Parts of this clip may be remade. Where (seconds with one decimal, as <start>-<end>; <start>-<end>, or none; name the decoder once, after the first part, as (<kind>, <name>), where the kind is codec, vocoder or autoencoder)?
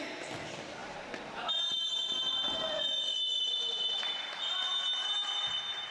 none